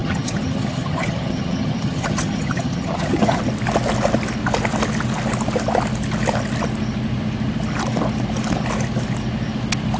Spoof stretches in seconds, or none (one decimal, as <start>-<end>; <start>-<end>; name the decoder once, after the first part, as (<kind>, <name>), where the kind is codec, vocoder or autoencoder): 0.0-3.4 (vocoder, HiFi-GAN)